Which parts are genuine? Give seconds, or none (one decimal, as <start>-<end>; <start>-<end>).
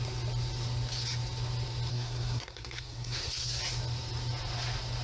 0.0-1.9; 3.6-5.0